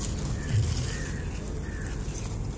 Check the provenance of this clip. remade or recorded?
recorded